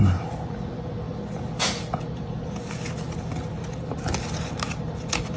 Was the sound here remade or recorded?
recorded